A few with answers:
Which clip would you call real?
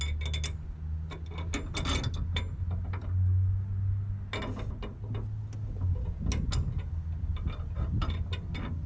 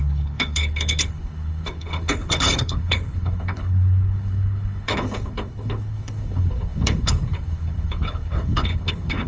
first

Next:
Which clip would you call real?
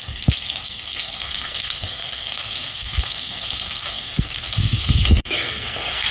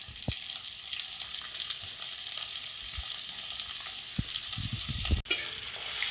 second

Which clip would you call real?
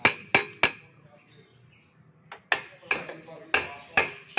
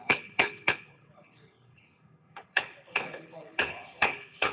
first